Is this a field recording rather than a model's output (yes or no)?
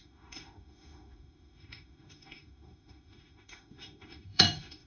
no